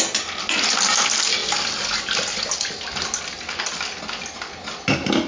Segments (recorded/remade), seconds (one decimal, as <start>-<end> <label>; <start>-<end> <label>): 0.0-5.3 recorded